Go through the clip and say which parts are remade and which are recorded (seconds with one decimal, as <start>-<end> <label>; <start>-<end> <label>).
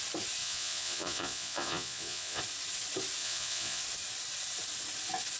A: 0.0-0.4 recorded; 0.4-2.4 remade; 2.4-3.2 recorded; 3.2-3.8 remade; 3.8-5.4 recorded